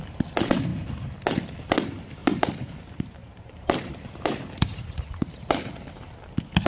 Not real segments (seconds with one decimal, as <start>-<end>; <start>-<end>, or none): 2.2-2.7; 3.2-6.1